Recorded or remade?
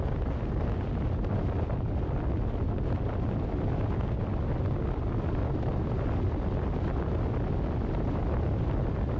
recorded